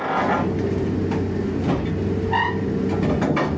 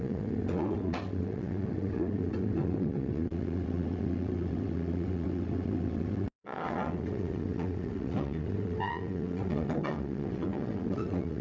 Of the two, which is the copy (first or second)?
second